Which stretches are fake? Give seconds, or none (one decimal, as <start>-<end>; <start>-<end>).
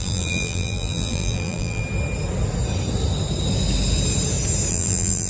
0.0-1.8; 4.7-5.3